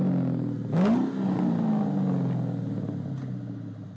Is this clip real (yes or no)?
yes